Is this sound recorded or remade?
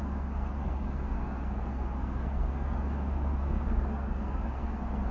remade